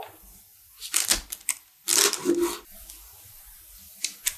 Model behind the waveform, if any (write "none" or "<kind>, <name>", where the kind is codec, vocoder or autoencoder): none